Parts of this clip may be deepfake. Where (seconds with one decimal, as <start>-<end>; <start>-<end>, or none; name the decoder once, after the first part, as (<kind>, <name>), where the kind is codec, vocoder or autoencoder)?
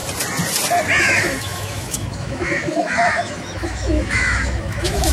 1.0-5.1 (autoencoder, DAC-VAE)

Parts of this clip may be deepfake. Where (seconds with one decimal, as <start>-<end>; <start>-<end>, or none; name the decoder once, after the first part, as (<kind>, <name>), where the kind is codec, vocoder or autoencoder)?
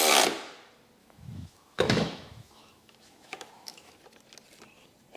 1.0-4.0 (autoencoder, DAC-VAE)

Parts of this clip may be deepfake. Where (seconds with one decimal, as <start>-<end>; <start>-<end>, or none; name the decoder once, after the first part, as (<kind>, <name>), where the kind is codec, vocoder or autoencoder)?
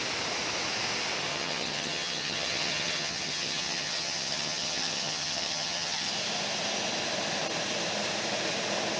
1.3-6.1 (vocoder, HiFi-GAN)